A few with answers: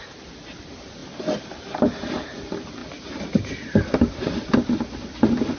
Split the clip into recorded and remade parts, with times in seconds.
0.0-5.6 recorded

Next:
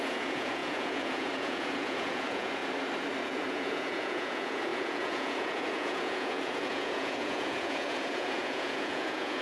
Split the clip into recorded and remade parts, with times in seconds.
0.0-2.6 remade; 2.6-3.2 recorded; 3.2-9.4 remade